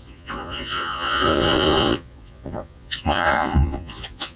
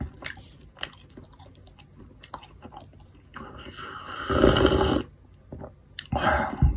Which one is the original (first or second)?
second